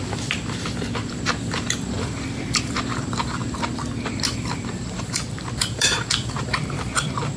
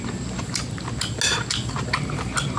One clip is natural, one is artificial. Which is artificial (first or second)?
first